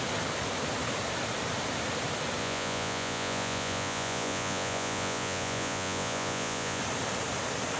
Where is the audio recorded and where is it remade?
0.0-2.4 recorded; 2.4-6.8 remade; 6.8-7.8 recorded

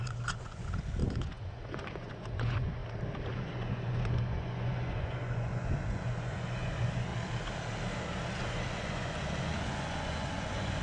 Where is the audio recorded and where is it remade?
0.0-2.8 remade; 2.8-3.3 recorded; 3.3-7.1 remade; 7.1-8.4 recorded; 8.4-10.8 remade

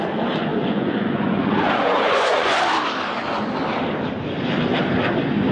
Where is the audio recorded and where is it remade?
0.0-0.5 recorded; 0.5-2.6 remade; 2.6-5.5 recorded

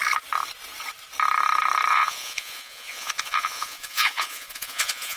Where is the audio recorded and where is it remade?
0.0-1.9 recorded; 1.9-5.2 remade

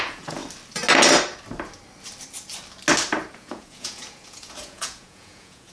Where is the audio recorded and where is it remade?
0.0-0.4 remade; 0.4-3.3 recorded; 3.3-5.7 remade

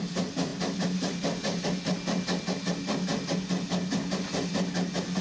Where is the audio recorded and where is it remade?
0.0-5.2 recorded

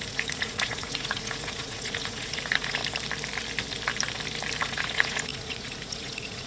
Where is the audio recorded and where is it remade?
0.0-2.8 remade; 2.8-4.6 recorded; 4.6-6.5 remade